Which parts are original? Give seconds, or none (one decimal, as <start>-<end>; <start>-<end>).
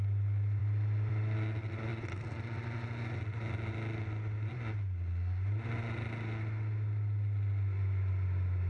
0.0-0.6; 1.1-8.7